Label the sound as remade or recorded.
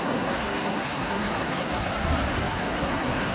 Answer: remade